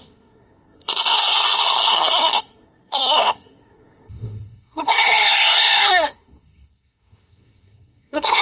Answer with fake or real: fake